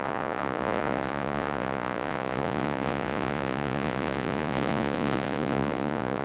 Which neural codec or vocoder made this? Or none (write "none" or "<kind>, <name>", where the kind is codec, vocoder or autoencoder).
vocoder, Vocos